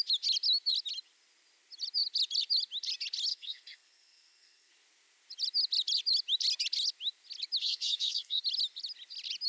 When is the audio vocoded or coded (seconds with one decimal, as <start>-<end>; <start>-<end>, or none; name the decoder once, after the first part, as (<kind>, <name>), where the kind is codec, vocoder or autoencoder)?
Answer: 3.3-4.7 (codec, SNAC); 7.6-8.4

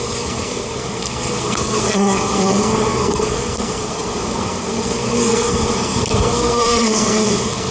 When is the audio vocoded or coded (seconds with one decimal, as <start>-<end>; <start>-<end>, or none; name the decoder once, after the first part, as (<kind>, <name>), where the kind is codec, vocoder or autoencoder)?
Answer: 0.0-7.7 (codec, SNAC)

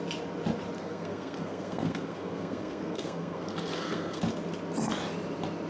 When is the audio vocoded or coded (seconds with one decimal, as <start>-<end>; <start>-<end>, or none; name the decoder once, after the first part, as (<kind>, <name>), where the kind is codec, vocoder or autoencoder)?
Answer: 0.8-4.2 (codec, SNAC)

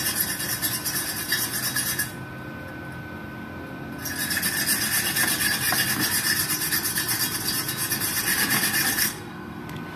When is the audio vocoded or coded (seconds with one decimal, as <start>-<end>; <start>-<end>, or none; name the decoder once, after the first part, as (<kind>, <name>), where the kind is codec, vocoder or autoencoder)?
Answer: 9.0-9.6 (codec, SNAC)

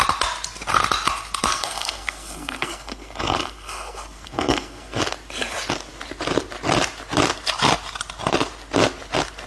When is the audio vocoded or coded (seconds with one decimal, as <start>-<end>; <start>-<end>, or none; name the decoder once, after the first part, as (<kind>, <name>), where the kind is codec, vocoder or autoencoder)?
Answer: 1.4-5.0 (codec, SNAC)